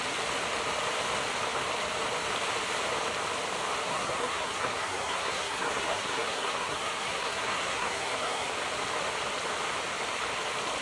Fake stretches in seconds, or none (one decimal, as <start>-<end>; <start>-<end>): 3.8-8.5